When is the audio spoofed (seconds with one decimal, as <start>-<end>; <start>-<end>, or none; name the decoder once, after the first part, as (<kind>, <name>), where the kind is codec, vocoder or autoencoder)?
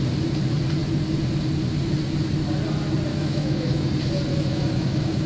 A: 3.1-3.9 (autoencoder, DAC-VAE); 4.3-5.3